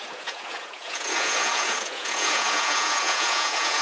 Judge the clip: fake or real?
fake